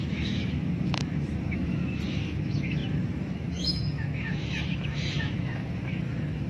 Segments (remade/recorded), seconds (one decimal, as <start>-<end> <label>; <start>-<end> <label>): 0.0-6.5 remade